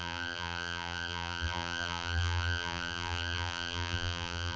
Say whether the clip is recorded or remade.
remade